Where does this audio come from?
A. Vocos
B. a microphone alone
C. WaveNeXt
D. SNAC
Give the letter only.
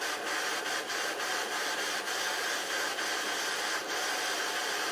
B